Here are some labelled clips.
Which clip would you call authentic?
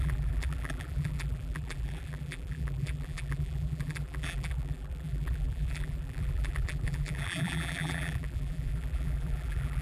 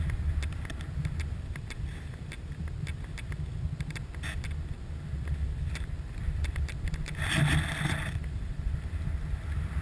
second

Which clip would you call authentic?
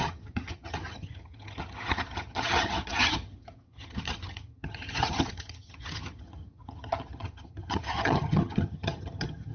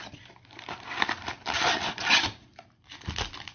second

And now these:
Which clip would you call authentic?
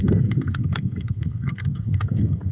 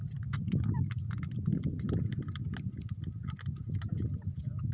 second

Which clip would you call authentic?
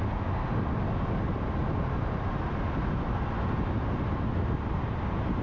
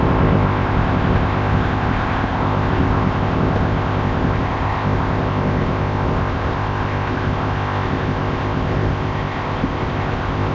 first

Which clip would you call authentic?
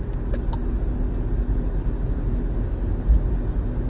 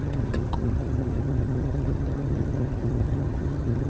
first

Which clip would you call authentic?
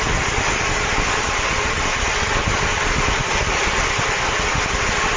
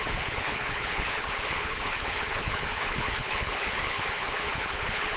first